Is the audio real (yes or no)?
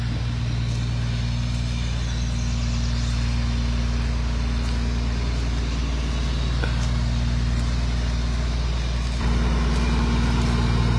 yes